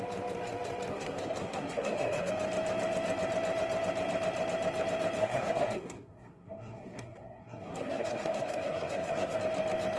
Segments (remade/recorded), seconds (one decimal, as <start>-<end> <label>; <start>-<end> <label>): 0.0-0.9 recorded; 0.9-2.3 remade; 2.3-5.2 recorded; 5.2-9.4 remade; 9.4-10.0 recorded